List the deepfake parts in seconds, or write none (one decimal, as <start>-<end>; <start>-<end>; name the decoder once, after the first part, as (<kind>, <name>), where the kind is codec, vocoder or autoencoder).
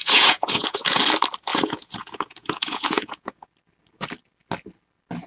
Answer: 0.0-1.0 (vocoder, Vocos); 1.5-3.5